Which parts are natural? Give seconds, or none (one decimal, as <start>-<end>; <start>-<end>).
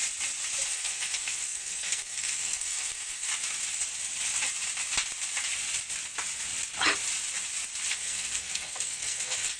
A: 0.0-0.7; 3.3-7.9